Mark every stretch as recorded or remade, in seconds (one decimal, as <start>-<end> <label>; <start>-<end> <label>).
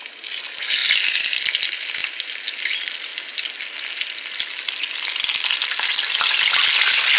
0.0-7.2 recorded